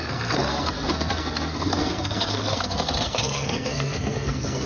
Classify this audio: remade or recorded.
remade